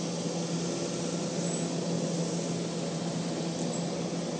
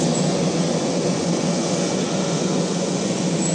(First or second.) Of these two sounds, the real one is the first